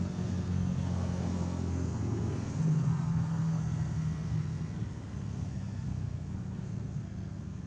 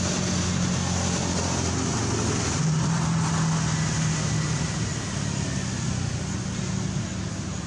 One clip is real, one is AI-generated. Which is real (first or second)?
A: second